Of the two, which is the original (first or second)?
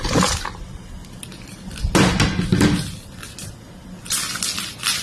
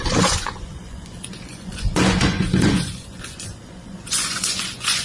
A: first